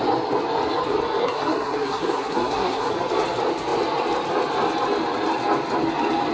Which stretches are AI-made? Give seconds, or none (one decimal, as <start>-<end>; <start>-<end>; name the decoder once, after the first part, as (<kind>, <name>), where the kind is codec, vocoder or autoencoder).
1.2-2.9 (codec, SNAC)